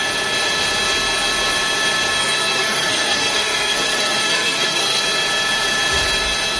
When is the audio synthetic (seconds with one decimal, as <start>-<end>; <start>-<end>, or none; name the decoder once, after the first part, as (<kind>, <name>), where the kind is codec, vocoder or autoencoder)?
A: 2.2-5.0 (codec, SNAC)